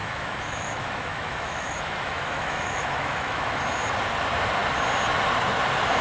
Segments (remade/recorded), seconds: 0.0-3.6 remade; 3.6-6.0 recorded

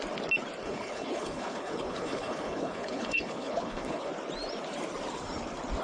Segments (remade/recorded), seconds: 0.0-0.6 recorded; 0.6-4.1 remade; 4.1-5.8 recorded

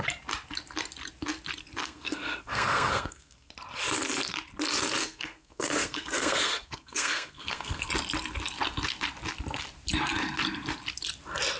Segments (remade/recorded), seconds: 0.0-1.8 recorded; 1.8-3.5 remade; 3.5-5.0 recorded; 5.0-7.9 remade; 7.9-11.6 recorded